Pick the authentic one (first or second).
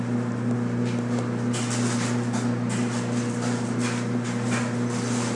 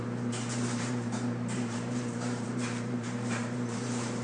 first